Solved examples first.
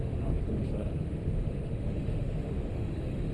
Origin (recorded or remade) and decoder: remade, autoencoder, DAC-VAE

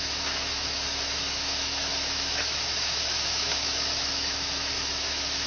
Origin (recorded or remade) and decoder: remade, autoencoder, DAC-VAE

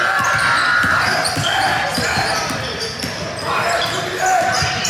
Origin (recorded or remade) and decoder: remade, vocoder, BigVGAN v2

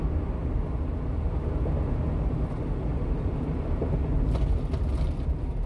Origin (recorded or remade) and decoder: recorded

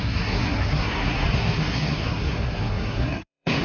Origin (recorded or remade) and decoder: remade, codec, SNAC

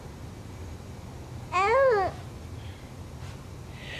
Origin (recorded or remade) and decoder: recorded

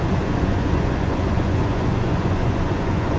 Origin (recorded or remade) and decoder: remade, vocoder, Vocos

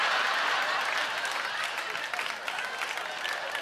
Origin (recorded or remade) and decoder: recorded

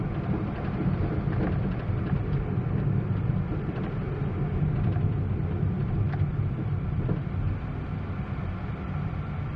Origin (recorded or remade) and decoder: recorded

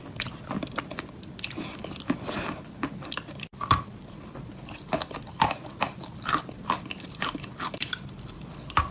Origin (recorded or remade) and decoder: recorded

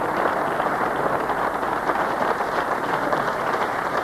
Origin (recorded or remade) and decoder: remade, vocoder, BigVGAN v2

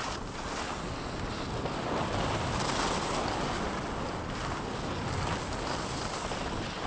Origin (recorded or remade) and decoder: recorded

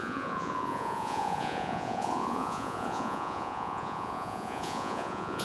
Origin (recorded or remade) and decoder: remade, vocoder, Vocos